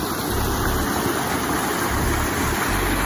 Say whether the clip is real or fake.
real